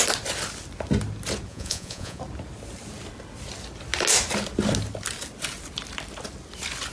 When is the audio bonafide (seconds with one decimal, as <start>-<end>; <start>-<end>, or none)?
0.0-1.5; 2.2-6.9